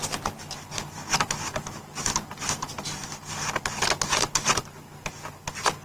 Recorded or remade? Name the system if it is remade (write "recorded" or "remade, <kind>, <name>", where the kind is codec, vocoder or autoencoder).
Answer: recorded